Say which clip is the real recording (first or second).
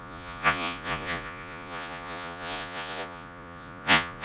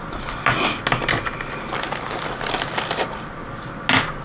second